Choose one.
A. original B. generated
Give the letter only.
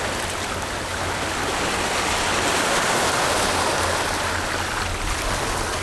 A